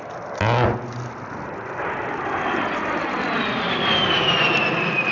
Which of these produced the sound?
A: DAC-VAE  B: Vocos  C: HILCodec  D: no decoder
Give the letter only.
D